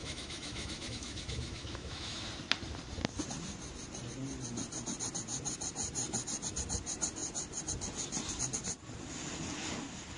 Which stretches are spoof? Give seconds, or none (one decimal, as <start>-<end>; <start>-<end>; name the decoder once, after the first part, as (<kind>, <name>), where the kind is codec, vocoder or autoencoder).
0.0-2.2 (autoencoder, DAC-VAE)

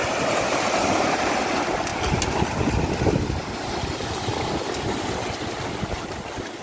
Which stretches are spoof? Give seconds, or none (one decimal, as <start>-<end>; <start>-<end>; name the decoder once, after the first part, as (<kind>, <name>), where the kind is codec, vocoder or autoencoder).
0.0-1.4 (vocoder, BigVGAN v2)

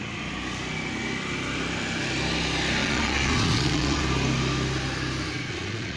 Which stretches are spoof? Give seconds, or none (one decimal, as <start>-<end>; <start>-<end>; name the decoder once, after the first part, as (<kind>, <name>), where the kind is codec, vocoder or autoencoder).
2.8-4.0 (vocoder, Vocos); 5.5-6.0

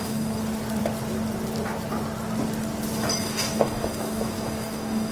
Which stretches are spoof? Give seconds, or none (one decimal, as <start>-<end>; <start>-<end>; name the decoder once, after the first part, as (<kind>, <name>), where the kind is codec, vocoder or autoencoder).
0.0-0.4 (codec, DAC); 3.2-5.1

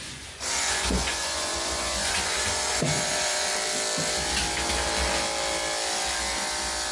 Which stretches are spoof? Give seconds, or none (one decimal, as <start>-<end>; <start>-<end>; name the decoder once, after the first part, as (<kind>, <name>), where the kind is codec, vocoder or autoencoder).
0.0-3.5 (vocoder, Vocos)

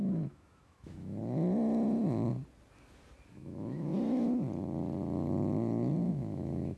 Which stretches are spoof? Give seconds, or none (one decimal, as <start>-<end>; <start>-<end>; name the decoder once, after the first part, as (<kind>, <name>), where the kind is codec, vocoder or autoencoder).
0.0-1.2 (autoencoder, DAC-VAE); 3.3-3.9; 6.1-6.8

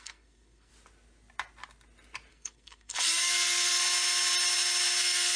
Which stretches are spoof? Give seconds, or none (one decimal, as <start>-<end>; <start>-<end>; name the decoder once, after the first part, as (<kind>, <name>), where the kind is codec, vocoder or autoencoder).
0.0-0.7 (codec, SNAC); 2.3-3.8; 5.0-5.4